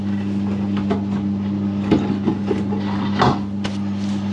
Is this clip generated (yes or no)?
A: no